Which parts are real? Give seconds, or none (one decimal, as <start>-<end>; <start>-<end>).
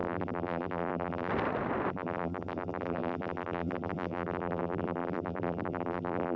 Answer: 1.3-1.9